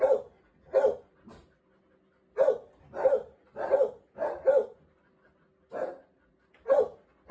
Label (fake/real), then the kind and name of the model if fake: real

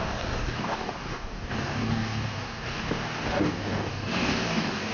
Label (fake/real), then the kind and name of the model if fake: fake, codec, DAC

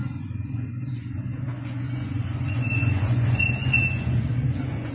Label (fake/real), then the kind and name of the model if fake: fake, vocoder, Vocos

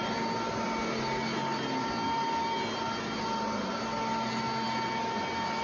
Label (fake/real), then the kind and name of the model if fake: real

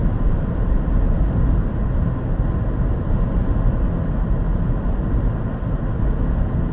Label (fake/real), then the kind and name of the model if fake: real